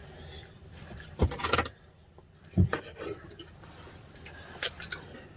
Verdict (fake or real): real